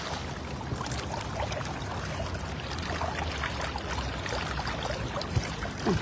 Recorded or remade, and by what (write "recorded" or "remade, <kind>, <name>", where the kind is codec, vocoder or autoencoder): recorded